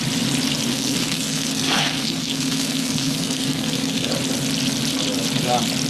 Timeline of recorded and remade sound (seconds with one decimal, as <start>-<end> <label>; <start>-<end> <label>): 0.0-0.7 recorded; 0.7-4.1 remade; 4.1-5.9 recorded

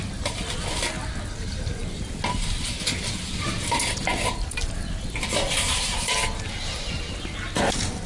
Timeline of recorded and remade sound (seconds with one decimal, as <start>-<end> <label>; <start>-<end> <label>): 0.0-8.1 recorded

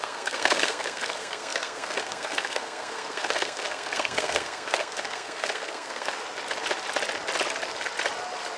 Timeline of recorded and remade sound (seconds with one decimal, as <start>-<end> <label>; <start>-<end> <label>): 0.0-6.1 remade; 6.1-8.6 recorded

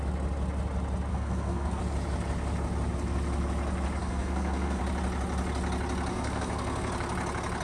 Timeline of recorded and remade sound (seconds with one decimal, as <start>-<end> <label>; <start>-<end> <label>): 0.0-1.1 recorded; 1.1-1.8 remade; 1.8-4.0 recorded; 4.0-4.8 remade; 4.8-6.1 recorded; 6.1-6.9 remade; 6.9-7.6 recorded

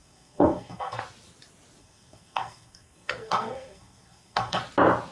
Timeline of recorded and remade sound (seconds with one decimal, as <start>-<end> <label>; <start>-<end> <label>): 0.0-1.0 remade; 1.0-1.8 recorded; 1.8-4.6 remade; 4.6-5.1 recorded

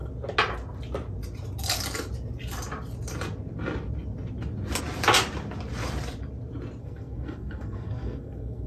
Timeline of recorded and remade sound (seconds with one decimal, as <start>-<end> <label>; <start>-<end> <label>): 0.0-6.8 recorded; 6.8-8.7 remade

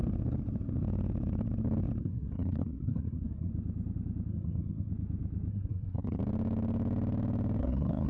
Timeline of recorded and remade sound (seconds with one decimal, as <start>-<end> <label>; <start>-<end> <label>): 0.0-2.0 recorded; 2.0-3.5 remade; 3.5-4.3 recorded; 4.3-4.9 remade; 4.9-5.5 recorded; 5.5-6.2 remade; 6.2-7.6 recorded; 7.6-8.1 remade